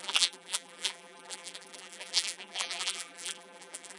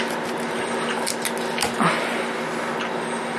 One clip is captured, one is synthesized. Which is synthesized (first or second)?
first